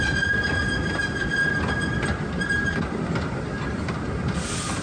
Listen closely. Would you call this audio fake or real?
real